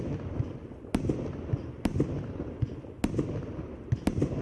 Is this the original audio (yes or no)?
yes